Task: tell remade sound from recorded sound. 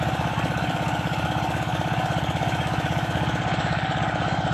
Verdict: remade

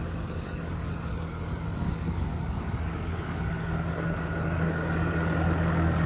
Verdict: remade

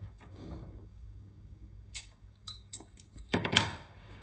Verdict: remade